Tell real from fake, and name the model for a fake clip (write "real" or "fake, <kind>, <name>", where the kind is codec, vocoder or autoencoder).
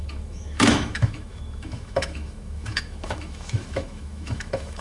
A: fake, autoencoder, DAC-VAE